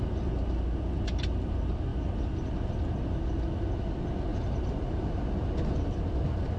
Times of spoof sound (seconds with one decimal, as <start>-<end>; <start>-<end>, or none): 4.3-5.5